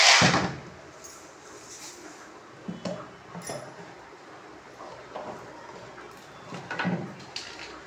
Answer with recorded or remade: recorded